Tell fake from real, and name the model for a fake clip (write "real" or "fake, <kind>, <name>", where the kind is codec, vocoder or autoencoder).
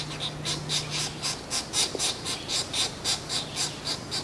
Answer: real